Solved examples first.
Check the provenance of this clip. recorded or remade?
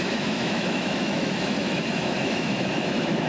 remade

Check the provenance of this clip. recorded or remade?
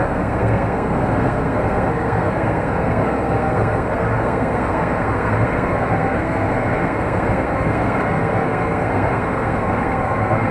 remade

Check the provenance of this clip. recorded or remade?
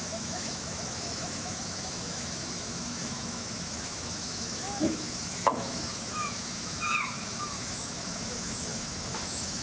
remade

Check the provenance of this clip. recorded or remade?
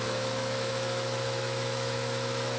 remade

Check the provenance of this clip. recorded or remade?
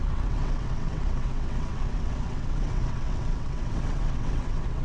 remade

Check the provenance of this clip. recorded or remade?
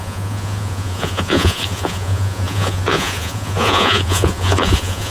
remade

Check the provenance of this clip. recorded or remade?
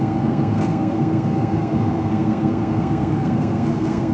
remade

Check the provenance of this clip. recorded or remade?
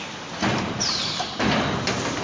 remade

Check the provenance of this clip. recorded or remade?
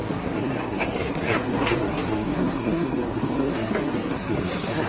remade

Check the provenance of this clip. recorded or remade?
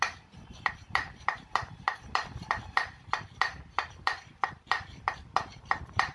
remade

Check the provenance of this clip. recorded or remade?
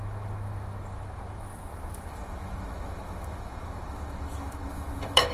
remade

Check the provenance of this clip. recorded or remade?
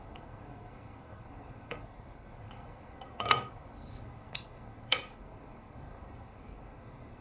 remade